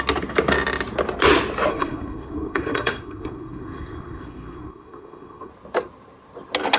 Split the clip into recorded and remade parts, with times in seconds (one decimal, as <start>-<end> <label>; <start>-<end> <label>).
0.0-1.7 recorded; 1.7-5.5 remade; 5.5-6.8 recorded